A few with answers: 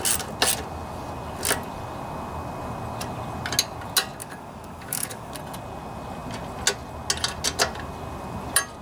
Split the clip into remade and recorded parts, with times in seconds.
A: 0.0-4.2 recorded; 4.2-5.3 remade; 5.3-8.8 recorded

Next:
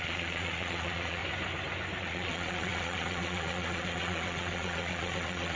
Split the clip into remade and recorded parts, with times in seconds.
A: 0.0-1.2 remade; 1.2-2.0 recorded; 2.0-5.6 remade

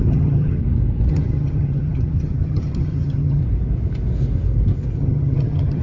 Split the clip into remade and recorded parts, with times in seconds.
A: 0.0-0.6 remade; 0.6-1.1 recorded; 1.1-3.4 remade; 3.4-5.0 recorded; 5.0-5.8 remade

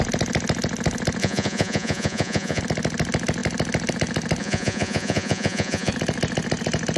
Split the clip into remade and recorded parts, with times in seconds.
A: 0.0-1.2 recorded; 1.2-2.6 remade; 2.6-4.4 recorded; 4.4-5.9 remade; 5.9-7.0 recorded